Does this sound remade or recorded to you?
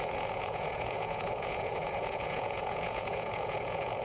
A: remade